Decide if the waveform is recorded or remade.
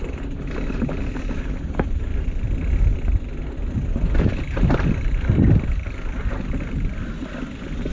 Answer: recorded